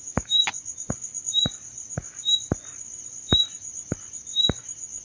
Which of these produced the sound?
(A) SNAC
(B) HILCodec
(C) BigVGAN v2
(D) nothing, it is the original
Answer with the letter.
D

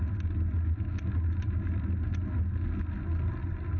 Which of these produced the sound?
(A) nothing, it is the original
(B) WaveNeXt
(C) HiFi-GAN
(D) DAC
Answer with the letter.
A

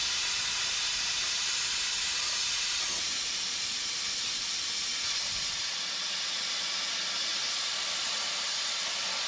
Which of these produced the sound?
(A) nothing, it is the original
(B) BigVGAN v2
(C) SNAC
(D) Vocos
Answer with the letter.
A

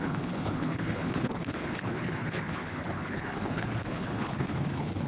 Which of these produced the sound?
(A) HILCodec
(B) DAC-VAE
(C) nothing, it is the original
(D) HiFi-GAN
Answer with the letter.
A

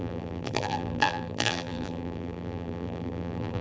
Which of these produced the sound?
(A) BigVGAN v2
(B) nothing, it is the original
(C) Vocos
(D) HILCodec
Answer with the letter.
A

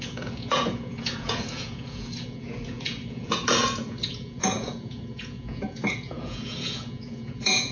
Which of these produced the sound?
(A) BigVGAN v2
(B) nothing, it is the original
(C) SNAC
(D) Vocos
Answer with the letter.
D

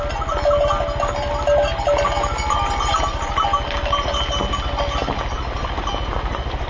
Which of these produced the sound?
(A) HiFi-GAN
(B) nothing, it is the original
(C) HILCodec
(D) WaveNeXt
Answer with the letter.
B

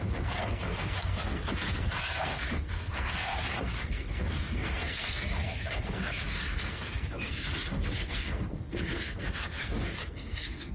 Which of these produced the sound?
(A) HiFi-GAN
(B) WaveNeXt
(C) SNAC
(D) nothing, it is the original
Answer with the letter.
C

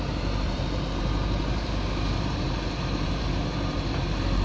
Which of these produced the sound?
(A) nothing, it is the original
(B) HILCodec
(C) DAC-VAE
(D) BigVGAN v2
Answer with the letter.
D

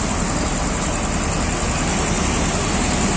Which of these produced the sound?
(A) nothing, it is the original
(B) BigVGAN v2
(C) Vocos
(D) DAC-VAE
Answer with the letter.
A